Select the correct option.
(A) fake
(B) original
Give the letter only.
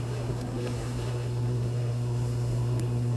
A